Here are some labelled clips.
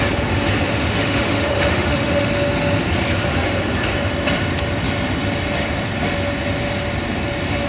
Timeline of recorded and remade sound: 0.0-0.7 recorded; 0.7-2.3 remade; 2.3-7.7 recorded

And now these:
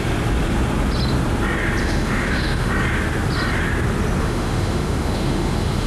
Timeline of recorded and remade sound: 0.0-1.8 recorded; 1.8-2.7 remade; 2.7-4.2 recorded; 4.2-5.9 remade

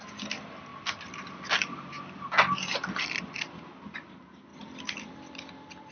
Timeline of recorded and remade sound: 0.0-5.9 recorded

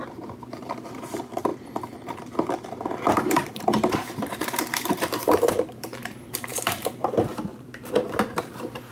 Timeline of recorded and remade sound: 0.0-0.6 recorded; 0.6-1.5 remade; 1.5-2.5 recorded; 2.5-8.9 remade

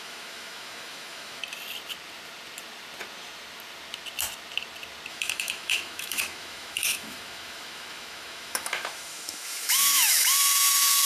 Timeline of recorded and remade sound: 0.0-1.4 remade; 1.4-5.1 recorded; 5.1-11.1 remade